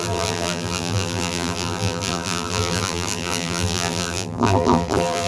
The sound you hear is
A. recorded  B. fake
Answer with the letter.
B